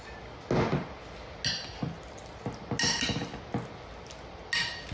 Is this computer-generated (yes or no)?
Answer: no